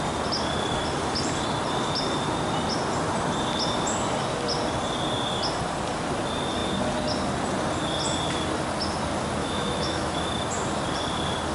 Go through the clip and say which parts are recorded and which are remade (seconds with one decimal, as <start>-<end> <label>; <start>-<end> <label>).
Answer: 0.0-9.4 recorded; 9.4-10.3 remade; 10.3-11.5 recorded